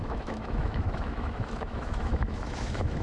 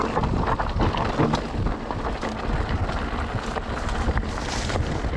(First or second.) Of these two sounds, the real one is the second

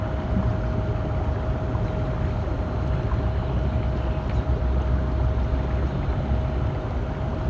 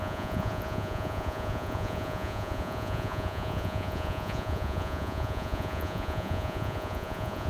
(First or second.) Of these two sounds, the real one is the first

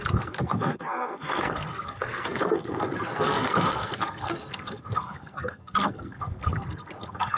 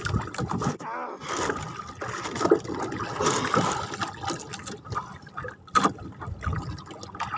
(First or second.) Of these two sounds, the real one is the second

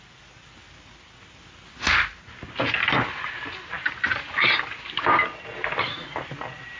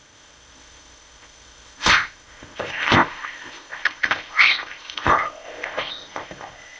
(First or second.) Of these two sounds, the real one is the first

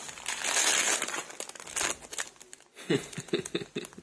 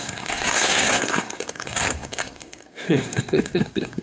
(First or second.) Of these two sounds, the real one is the first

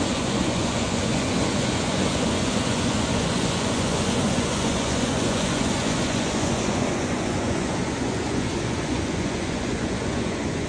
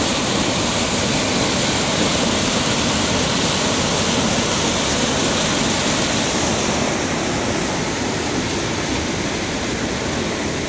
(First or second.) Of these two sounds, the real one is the second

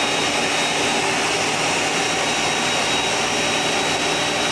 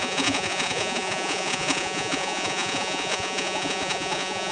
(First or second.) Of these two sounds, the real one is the first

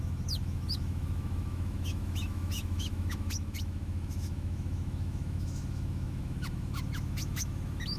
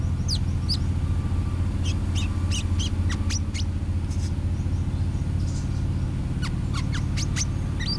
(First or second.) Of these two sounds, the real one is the second